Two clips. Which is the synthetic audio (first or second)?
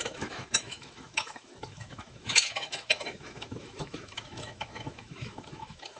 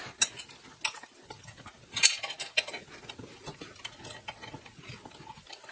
first